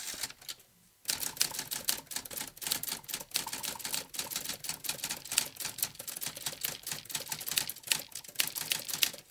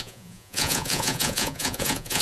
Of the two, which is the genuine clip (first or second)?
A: first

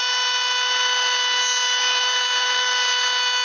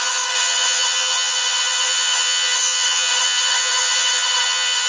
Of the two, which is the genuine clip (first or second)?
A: first